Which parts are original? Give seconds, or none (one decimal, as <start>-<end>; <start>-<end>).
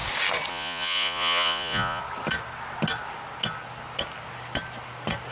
0.0-0.5; 2.0-5.3